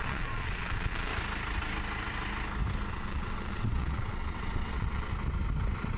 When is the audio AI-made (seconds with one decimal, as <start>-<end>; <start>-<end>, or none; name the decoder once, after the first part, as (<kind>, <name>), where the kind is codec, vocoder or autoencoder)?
0.0-1.1 (vocoder, WaveNeXt); 2.9-5.1